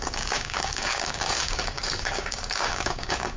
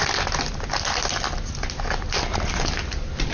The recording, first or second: second